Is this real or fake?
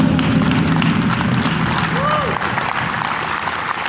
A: real